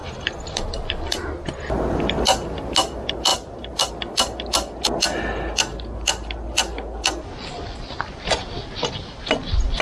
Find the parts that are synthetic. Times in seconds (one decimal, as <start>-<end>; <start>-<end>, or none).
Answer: 0.0-1.4; 3.3-3.9

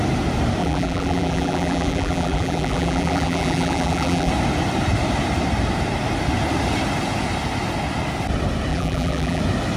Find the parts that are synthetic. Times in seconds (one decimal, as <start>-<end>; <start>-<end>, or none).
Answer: 0.6-4.3; 8.7-9.4

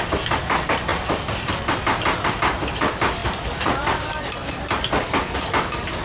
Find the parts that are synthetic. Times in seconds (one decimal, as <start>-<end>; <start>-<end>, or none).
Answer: 0.9-2.3; 3.2-4.0; 4.4-5.5

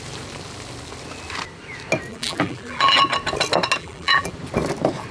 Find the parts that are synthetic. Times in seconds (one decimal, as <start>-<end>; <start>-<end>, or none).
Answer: 2.1-3.0; 3.8-4.3

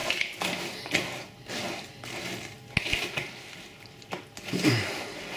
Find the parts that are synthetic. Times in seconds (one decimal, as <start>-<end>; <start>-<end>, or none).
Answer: none

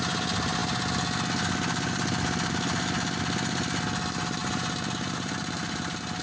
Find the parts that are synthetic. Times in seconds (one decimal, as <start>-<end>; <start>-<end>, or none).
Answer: 4.4-5.3

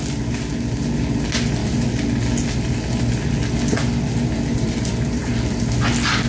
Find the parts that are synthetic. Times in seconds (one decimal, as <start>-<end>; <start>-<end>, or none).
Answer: 4.5-5.3

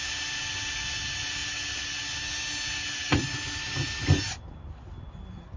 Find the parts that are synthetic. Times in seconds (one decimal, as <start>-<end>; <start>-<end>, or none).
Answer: none